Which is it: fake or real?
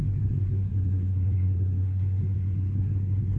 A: fake